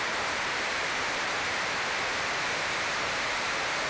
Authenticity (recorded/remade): remade